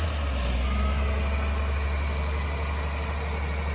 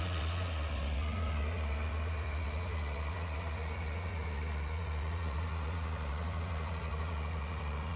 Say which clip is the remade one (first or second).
second